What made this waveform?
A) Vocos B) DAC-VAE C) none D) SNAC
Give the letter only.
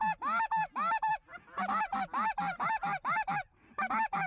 C